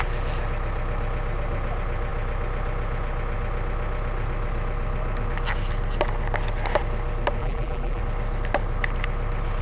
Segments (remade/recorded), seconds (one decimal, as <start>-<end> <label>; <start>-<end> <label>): 0.0-7.4 recorded; 7.4-8.0 remade; 8.0-9.6 recorded